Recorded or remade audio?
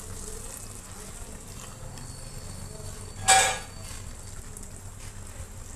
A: recorded